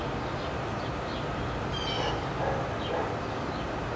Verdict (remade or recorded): recorded